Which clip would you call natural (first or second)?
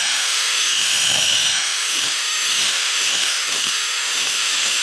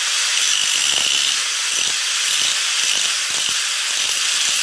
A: second